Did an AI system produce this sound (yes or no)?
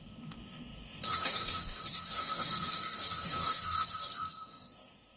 yes